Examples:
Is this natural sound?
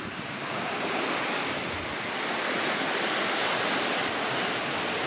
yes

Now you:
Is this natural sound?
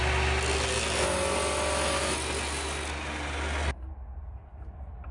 yes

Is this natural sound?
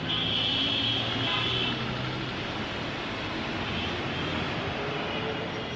yes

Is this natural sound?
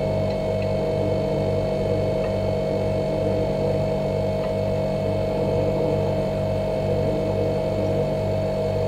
yes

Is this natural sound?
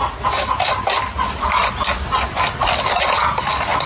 yes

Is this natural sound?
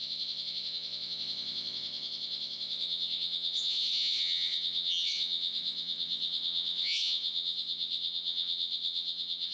no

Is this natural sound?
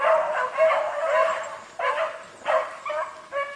yes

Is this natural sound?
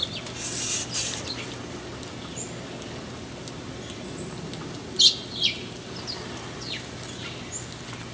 yes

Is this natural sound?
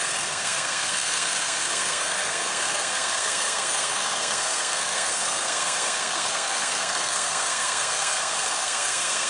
no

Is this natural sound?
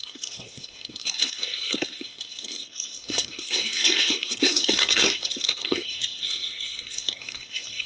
no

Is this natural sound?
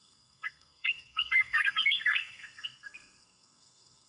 no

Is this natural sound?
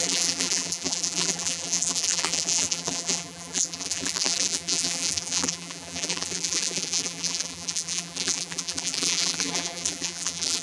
no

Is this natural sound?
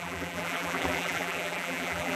no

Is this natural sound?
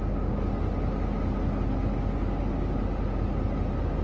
yes